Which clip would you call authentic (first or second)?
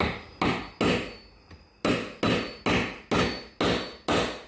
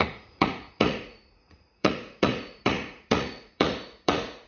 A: first